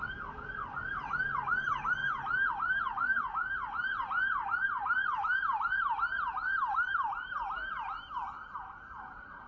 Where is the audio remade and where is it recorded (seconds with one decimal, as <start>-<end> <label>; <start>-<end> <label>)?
0.0-2.0 remade; 2.0-2.5 recorded; 2.5-3.4 remade; 3.4-4.8 recorded; 4.8-9.5 remade